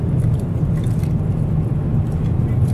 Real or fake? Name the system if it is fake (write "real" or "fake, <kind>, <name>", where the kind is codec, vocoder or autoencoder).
real